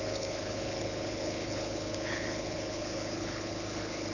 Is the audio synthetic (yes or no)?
yes